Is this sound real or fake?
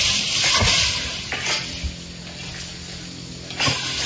real